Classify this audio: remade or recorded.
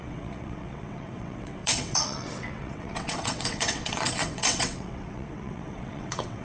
remade